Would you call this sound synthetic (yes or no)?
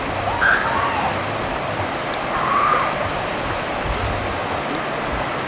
no